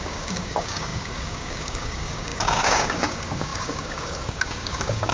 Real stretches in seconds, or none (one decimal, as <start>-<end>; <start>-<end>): none